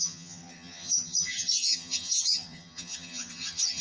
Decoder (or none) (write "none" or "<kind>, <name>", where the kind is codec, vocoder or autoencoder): vocoder, HiFi-GAN